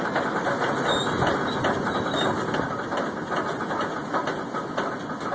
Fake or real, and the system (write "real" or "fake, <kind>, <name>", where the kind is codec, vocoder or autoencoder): real